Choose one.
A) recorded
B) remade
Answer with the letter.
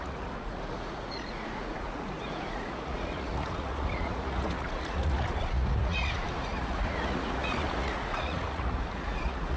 B